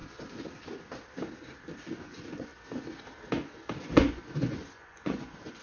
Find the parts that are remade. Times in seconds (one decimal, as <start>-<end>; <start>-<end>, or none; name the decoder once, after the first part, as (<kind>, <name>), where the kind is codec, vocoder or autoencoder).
2.0-2.5 (vocoder, Vocos); 3.8-5.6